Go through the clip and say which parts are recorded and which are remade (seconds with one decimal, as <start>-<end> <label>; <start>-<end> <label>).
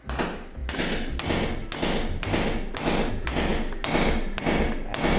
0.0-5.2 recorded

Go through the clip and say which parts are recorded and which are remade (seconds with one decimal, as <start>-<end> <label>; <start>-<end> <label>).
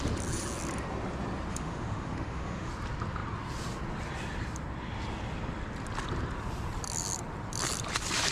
0.0-1.5 recorded; 1.5-2.7 remade; 2.7-8.3 recorded